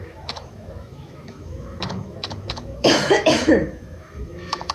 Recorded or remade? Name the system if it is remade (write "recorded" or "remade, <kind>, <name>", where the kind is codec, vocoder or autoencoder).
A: remade, autoencoder, DAC-VAE